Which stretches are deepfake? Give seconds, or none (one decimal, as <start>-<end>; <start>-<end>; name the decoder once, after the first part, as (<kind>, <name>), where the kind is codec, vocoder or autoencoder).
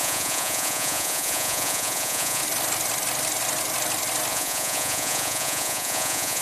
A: 0.0-2.4 (vocoder, Vocos); 4.3-6.4